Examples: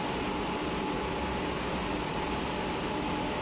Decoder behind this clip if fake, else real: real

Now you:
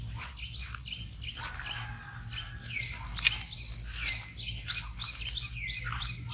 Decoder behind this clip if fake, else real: real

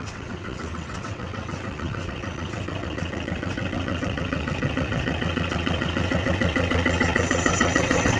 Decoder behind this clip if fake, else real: fake, vocoder, WaveNeXt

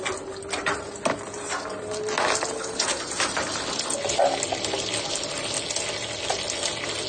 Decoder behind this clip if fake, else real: real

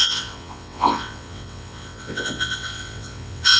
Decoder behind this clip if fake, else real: fake, vocoder, WaveNeXt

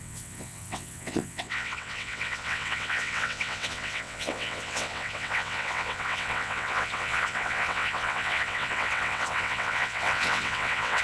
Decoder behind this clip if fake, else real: fake, vocoder, WaveNeXt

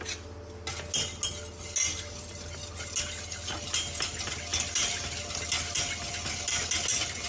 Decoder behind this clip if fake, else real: real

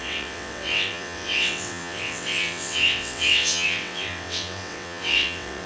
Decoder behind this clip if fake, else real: fake, vocoder, WaveNeXt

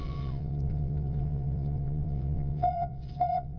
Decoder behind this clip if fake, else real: fake, vocoder, WaveNeXt